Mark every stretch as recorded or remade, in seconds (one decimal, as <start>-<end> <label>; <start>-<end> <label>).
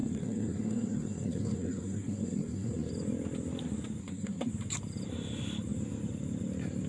0.0-2.9 remade; 2.9-4.0 recorded; 4.0-4.5 remade; 4.5-6.9 recorded